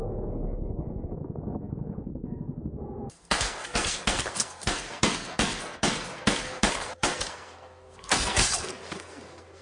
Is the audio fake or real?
fake